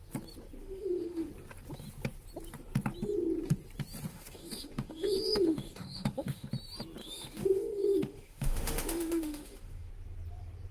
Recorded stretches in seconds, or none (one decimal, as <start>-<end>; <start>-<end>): 0.0-0.6; 1.3-4.1; 6.5-7.0; 9.9-10.7